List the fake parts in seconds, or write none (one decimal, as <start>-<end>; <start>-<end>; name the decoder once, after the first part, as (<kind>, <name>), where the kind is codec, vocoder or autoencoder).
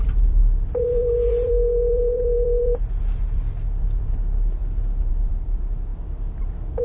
0.0-4.6 (vocoder, BigVGAN v2); 5.1-6.8